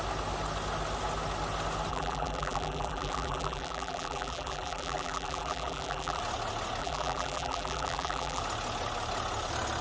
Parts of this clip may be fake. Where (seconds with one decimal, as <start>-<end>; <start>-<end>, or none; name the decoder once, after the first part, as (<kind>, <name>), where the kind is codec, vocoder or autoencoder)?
1.9-6.2 (vocoder, BigVGAN v2); 6.8-8.4